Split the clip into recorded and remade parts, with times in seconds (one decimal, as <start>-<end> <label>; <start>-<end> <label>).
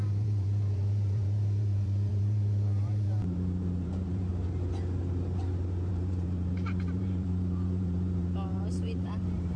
0.0-4.3 remade; 4.3-5.9 recorded; 5.9-9.6 remade